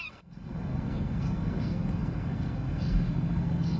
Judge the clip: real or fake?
fake